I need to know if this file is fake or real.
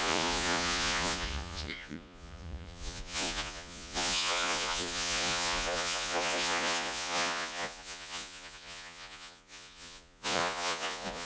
fake